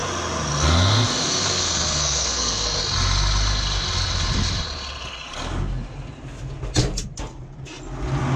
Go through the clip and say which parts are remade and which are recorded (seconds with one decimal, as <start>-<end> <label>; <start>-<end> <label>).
0.0-1.2 recorded; 1.2-2.8 remade; 2.8-8.4 recorded